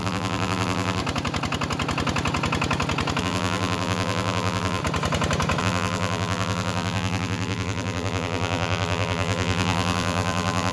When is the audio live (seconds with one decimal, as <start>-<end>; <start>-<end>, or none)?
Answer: 1.0-3.2; 4.8-5.6